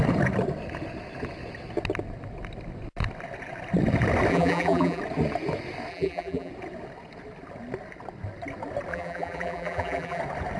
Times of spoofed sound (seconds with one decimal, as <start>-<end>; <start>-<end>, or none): 4.3-5.0; 5.9-6.5; 8.9-10.2